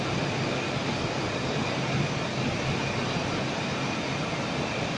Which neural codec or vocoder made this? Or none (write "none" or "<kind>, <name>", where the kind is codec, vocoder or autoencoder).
none